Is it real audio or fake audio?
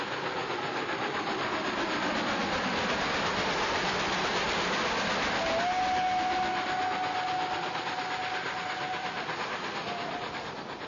real